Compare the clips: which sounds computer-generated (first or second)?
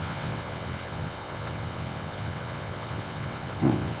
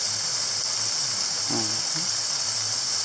first